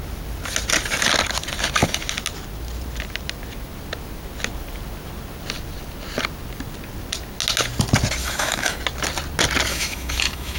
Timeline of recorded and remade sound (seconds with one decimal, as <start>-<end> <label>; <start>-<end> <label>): 0.0-8.2 recorded; 8.2-8.8 remade; 8.8-9.7 recorded; 9.7-10.6 remade